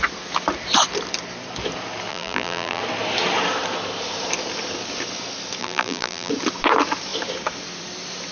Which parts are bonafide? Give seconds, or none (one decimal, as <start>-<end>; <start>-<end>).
0.0-2.1; 2.8-5.6; 6.3-8.3